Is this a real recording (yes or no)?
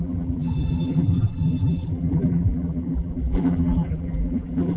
no